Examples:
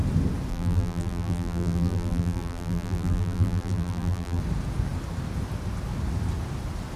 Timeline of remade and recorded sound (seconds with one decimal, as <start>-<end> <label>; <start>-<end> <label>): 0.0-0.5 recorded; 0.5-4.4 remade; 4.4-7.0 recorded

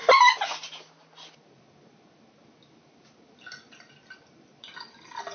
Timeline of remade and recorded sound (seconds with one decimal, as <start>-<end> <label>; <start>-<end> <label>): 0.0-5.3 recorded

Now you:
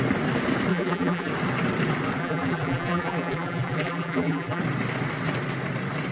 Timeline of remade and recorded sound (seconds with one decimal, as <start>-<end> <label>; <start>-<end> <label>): 0.0-0.7 recorded; 0.7-1.3 remade; 1.3-2.2 recorded; 2.2-4.6 remade; 4.6-6.1 recorded

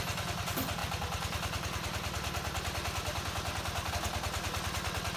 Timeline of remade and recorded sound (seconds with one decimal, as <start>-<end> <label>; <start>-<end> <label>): 0.0-5.2 recorded